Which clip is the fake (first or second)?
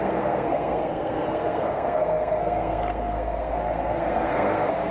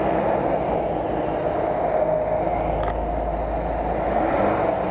first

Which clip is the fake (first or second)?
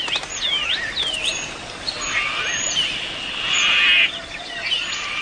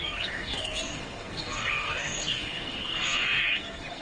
second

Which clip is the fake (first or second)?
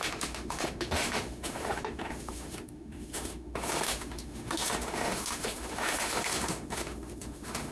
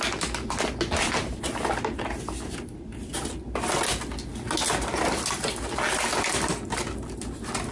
first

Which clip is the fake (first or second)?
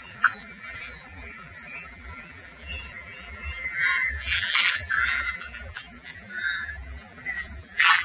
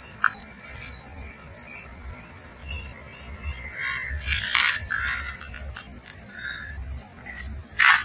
first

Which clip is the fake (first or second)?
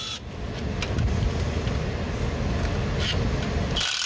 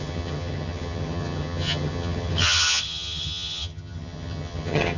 second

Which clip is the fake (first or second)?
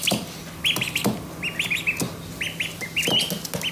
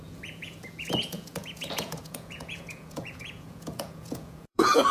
second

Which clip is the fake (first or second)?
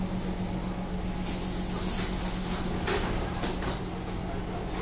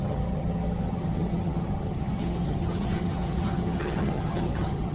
second